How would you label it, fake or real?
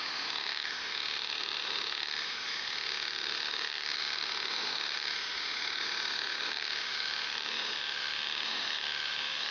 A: fake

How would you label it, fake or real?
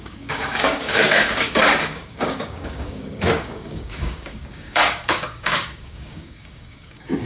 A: fake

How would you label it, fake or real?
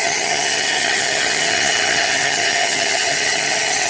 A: fake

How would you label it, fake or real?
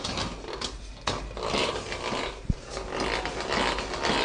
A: real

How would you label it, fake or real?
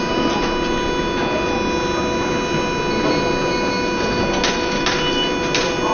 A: real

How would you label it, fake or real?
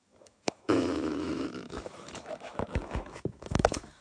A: fake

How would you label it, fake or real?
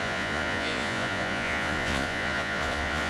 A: fake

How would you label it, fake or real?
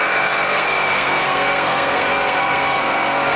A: fake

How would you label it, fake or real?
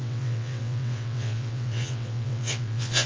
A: fake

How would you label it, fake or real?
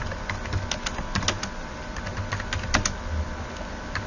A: real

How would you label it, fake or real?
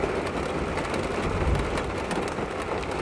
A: real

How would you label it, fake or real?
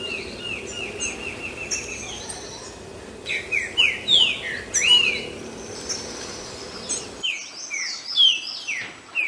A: real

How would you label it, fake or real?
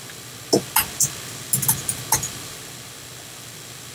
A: real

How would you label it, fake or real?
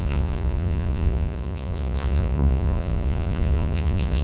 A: fake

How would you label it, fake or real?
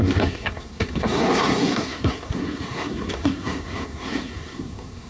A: fake